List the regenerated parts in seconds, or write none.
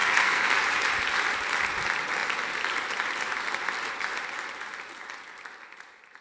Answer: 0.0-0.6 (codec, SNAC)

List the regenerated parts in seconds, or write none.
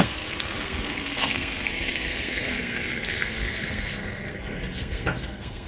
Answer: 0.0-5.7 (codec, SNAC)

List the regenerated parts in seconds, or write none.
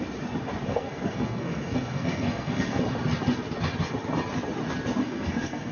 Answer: 0.7-2.8 (codec, SNAC); 5.0-5.7